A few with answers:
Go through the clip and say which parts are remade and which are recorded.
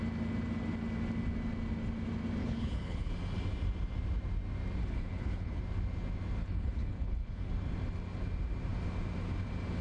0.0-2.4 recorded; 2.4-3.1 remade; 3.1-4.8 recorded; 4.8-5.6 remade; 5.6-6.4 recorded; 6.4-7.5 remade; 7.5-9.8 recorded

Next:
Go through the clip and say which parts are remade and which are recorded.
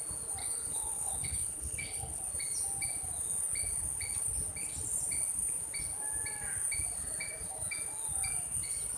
0.0-0.4 recorded; 0.4-2.2 remade; 2.2-9.0 recorded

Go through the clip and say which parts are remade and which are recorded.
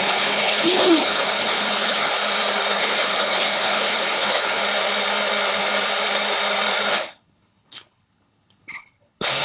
0.0-2.1 remade; 2.1-2.8 recorded; 2.8-4.6 remade; 4.6-6.9 recorded; 6.9-9.4 remade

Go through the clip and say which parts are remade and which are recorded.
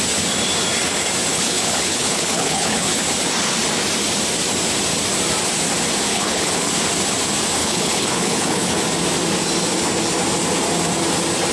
0.0-1.3 recorded; 1.3-3.0 remade; 3.0-6.1 recorded; 6.1-6.7 remade; 6.7-7.6 recorded; 7.6-8.8 remade; 8.8-11.5 recorded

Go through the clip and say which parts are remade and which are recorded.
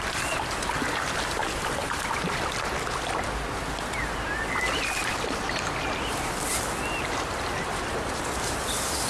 0.0-9.1 recorded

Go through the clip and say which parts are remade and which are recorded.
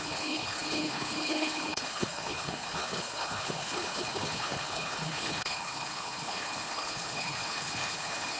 0.0-8.4 remade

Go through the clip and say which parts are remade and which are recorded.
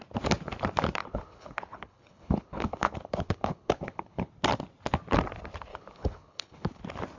0.0-1.0 recorded; 1.0-4.3 remade; 4.3-5.7 recorded; 5.7-6.8 remade; 6.8-7.2 recorded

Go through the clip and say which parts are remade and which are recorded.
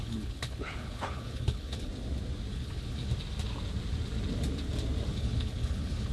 0.0-1.9 remade; 1.9-2.5 recorded; 2.5-3.1 remade; 3.1-5.1 recorded; 5.1-6.1 remade